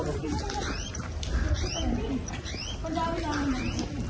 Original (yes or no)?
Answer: yes